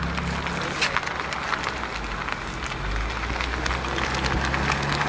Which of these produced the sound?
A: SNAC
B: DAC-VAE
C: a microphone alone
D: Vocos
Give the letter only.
C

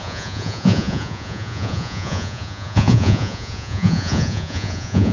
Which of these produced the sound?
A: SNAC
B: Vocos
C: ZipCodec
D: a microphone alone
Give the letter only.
B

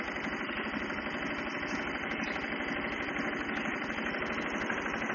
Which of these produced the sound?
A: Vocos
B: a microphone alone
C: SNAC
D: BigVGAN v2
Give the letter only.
B